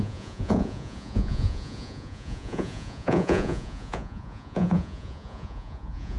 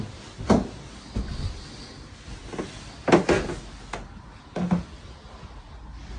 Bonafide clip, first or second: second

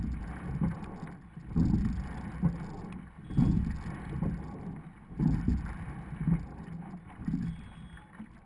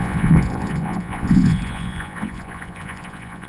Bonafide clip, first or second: first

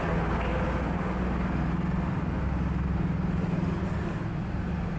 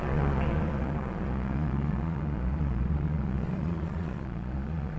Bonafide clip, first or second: first